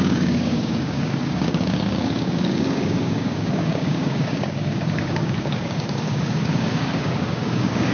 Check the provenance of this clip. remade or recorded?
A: remade